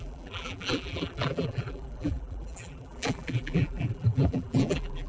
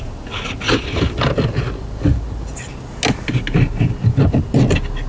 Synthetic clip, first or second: first